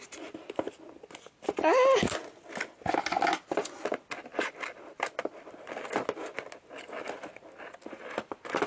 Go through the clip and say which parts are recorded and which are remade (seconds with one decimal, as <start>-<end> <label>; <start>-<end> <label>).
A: 0.0-8.7 recorded

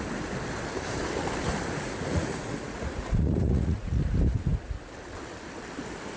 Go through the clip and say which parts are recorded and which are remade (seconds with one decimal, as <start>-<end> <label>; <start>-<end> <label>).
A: 0.0-2.1 recorded; 2.1-4.0 remade; 4.0-6.2 recorded

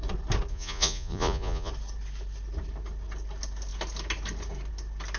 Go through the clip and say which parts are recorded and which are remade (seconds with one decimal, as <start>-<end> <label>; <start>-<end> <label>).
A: 0.0-0.5 recorded; 0.5-1.7 remade; 1.7-5.2 recorded

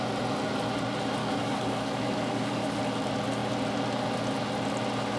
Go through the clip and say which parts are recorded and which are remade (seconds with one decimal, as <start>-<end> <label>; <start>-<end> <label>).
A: 0.0-1.2 recorded; 1.2-2.8 remade; 2.8-5.2 recorded

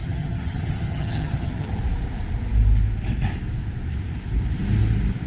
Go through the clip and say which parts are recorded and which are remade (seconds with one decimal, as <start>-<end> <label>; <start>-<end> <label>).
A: 0.0-1.8 remade; 1.8-5.3 recorded